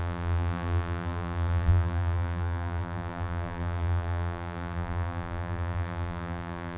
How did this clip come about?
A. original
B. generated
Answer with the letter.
B